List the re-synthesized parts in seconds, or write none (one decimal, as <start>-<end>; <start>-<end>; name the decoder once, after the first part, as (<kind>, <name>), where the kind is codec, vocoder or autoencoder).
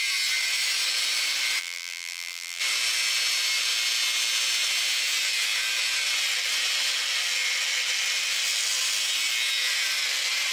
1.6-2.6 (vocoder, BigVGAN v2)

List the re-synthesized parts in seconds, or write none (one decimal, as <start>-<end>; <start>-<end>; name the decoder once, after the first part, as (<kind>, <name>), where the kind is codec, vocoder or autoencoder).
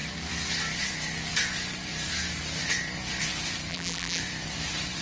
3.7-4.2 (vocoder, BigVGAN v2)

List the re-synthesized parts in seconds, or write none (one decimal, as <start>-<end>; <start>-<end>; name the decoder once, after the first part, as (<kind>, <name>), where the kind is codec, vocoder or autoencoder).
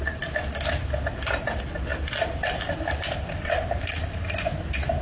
1.9-2.5 (vocoder, BigVGAN v2)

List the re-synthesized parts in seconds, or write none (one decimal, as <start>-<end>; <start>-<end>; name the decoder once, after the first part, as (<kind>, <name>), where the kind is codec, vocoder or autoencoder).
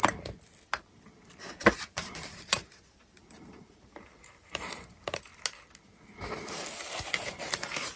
1.2-5.3 (vocoder, BigVGAN v2); 7.2-8.0